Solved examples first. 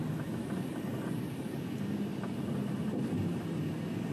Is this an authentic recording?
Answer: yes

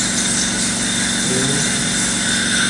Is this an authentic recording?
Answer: yes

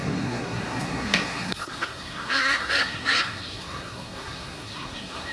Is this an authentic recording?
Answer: no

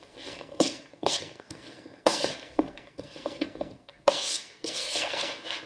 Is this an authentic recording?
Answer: no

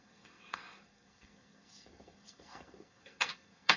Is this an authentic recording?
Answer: no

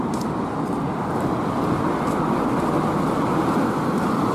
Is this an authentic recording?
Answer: yes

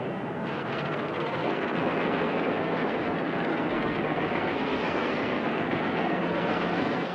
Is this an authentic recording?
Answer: no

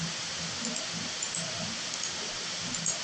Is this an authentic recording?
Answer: yes